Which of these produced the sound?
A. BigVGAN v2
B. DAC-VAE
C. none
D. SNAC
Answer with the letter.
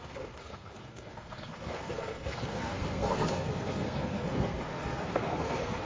D